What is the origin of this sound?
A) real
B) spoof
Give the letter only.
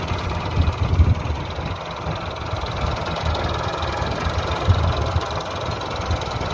A